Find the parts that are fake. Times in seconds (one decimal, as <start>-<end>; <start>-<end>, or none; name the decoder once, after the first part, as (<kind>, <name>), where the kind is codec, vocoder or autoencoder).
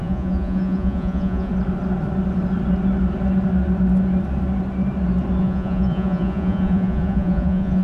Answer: 0.0-1.5 (vocoder, Vocos); 5.4-7.8